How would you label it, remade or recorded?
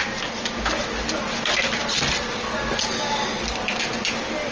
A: recorded